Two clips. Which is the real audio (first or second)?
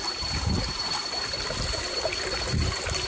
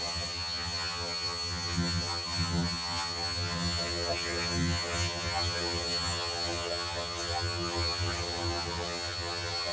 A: first